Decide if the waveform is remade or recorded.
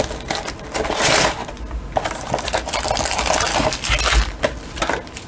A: recorded